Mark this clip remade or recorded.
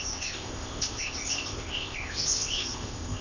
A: remade